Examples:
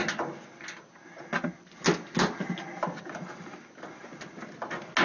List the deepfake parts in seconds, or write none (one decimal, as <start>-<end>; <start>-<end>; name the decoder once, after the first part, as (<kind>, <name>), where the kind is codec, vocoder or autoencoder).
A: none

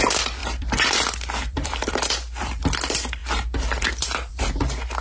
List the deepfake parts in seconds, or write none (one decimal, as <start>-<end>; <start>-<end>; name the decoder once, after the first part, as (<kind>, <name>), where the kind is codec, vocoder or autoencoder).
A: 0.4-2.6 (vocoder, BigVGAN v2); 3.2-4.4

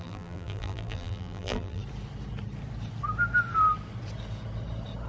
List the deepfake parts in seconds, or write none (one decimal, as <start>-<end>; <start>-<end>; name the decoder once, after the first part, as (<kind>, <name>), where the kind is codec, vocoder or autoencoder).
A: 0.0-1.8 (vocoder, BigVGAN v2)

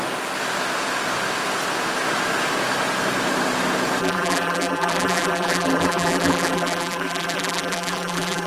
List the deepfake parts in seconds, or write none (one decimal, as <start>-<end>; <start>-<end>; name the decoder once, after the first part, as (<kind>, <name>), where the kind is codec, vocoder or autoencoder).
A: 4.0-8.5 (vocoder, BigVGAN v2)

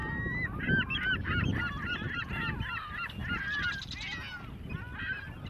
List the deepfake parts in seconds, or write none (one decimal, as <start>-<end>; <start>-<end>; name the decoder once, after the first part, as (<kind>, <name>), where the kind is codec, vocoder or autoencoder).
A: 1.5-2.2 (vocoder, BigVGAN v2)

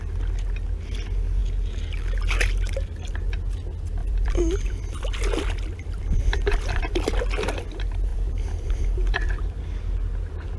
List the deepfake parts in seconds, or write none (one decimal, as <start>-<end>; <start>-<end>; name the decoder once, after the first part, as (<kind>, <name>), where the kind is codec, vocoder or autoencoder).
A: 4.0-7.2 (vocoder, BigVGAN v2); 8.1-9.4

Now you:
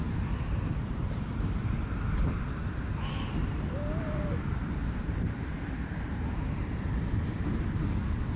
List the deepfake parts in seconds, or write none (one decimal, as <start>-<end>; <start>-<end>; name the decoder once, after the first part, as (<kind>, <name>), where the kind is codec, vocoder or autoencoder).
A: 2.6-7.5 (vocoder, BigVGAN v2)

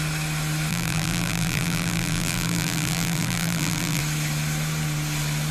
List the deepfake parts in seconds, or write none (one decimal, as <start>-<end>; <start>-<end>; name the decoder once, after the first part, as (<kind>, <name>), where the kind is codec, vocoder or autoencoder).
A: 0.7-4.0 (vocoder, BigVGAN v2)